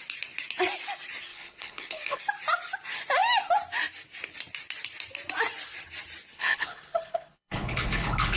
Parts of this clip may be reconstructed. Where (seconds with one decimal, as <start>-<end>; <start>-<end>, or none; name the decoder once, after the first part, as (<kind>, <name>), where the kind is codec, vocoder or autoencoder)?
1.3-2.2 (codec, HILCodec); 6.3-8.4